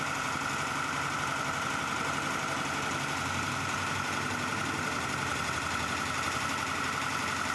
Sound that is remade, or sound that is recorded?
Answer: recorded